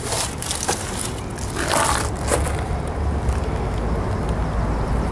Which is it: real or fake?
real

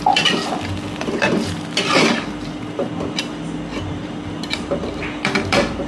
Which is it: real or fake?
fake